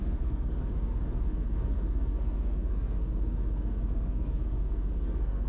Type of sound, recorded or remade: remade